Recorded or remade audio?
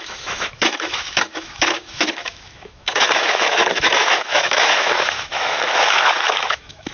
remade